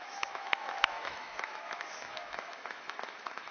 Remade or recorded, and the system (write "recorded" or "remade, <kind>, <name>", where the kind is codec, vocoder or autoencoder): remade, autoencoder, DAC-VAE